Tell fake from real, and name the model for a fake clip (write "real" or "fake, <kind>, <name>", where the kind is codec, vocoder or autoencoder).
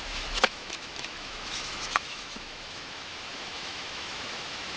fake, autoencoder, DAC-VAE